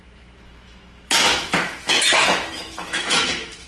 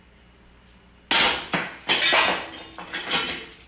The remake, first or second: first